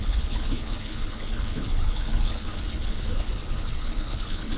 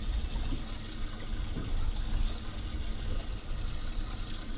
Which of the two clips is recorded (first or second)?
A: second